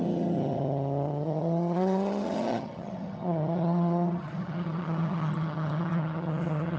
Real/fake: fake